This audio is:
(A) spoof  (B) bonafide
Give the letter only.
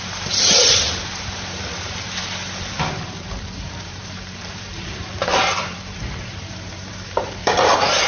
A